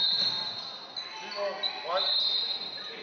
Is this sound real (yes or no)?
yes